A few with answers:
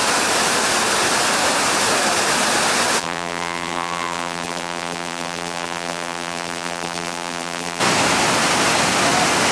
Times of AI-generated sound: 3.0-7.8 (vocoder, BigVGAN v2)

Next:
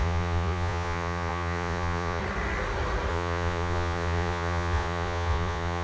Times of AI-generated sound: 0.0-2.2 (vocoder, Vocos); 3.1-5.8